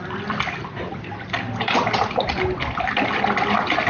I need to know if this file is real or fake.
real